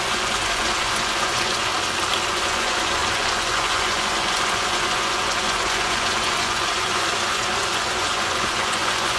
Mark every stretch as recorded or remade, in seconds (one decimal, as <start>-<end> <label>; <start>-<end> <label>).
0.0-1.7 remade; 1.7-2.3 recorded; 2.3-9.2 remade